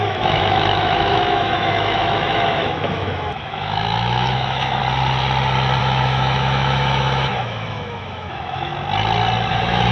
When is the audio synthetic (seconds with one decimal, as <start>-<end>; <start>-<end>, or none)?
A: 0.0-4.8; 5.8-8.7; 9.5-9.9